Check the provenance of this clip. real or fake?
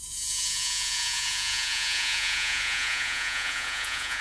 fake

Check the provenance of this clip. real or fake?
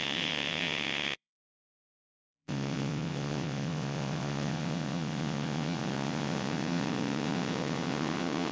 fake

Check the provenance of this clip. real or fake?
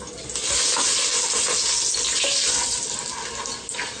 real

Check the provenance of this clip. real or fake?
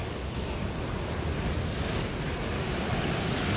real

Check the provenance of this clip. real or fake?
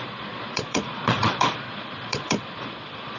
fake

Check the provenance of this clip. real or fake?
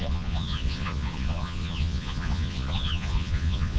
fake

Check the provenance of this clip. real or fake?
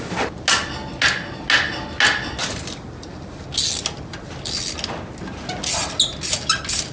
real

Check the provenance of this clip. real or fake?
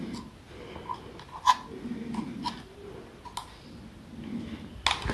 real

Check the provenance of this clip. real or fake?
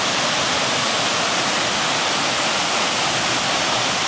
real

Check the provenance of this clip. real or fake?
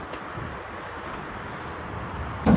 real